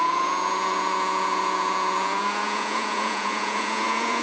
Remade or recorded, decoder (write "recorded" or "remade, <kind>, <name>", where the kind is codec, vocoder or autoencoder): remade, vocoder, Vocos